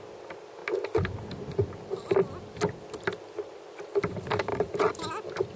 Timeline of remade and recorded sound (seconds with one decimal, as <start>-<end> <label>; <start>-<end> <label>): 0.0-0.6 remade; 0.6-4.0 recorded; 4.0-5.6 remade